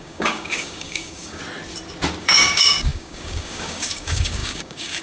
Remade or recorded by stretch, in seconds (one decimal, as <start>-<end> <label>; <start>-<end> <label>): 0.0-1.4 remade; 1.4-2.2 recorded; 2.2-5.0 remade